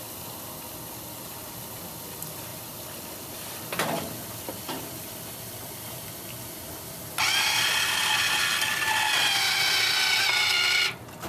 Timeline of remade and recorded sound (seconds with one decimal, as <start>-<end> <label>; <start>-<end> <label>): 0.0-2.5 recorded; 2.5-6.2 remade; 6.2-11.3 recorded